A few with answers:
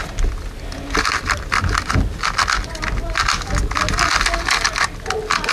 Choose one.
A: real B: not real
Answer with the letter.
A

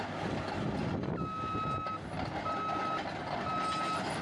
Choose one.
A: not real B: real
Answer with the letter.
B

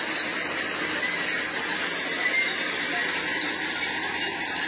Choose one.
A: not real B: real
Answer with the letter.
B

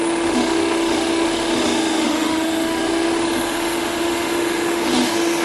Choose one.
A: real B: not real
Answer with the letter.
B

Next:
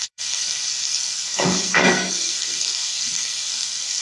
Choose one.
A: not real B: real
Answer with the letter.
A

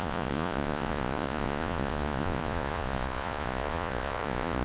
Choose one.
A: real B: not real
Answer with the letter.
B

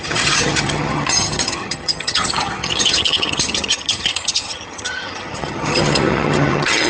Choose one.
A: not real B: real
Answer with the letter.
A